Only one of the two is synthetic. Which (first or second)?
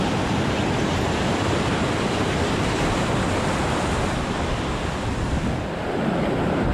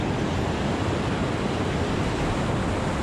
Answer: first